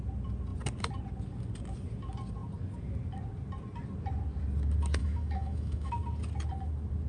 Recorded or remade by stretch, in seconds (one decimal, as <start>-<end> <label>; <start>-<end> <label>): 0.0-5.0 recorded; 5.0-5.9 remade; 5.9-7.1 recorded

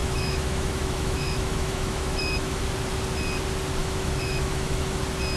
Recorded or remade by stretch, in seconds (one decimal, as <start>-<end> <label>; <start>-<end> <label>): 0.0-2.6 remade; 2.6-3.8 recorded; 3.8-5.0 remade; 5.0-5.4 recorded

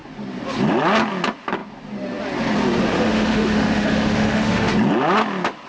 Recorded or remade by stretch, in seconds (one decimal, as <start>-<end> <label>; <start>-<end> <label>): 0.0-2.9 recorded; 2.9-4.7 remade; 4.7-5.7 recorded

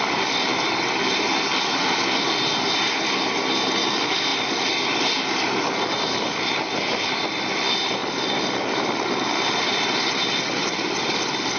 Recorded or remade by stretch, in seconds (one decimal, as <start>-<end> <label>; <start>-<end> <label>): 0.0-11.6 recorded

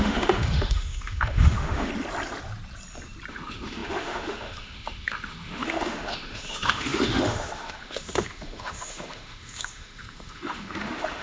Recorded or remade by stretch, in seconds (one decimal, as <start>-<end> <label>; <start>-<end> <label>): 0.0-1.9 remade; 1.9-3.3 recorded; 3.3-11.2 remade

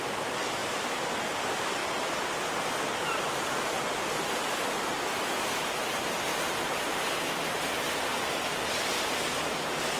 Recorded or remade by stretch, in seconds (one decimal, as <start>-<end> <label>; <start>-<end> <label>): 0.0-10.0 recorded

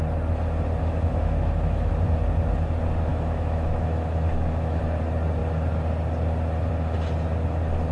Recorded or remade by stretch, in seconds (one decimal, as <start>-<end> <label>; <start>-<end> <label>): 0.0-0.8 recorded; 0.8-1.9 remade; 1.9-3.1 recorded; 3.1-4.8 remade; 4.8-7.9 recorded